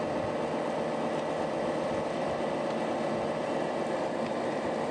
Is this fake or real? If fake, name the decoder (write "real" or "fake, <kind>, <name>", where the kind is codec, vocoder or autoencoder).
real